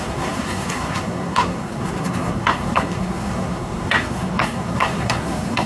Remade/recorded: remade